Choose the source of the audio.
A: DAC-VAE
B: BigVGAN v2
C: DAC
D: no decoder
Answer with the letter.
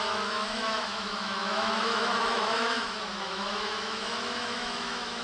A